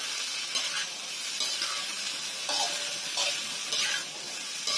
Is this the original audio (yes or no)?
yes